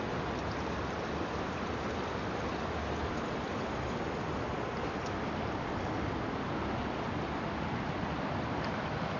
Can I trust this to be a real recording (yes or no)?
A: yes